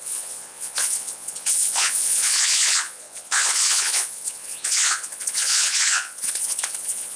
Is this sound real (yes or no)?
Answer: no